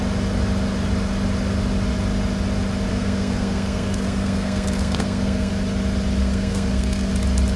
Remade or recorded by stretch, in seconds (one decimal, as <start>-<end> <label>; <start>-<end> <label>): 0.0-2.9 recorded; 2.9-5.5 remade; 5.5-6.2 recorded; 6.2-7.1 remade; 7.1-7.6 recorded